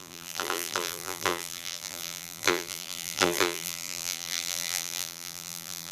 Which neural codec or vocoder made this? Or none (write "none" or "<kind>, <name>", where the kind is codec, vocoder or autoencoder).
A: vocoder, BigVGAN v2